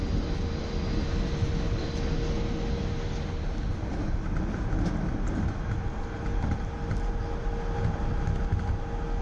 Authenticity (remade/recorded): recorded